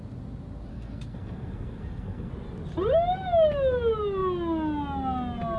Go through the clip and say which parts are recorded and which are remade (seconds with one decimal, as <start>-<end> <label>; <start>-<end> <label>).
0.0-0.7 recorded; 0.7-2.3 remade; 2.3-5.6 recorded